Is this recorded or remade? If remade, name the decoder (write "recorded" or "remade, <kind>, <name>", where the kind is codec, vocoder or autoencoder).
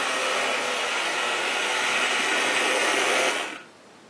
recorded